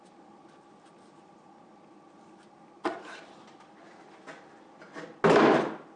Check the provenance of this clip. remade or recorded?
recorded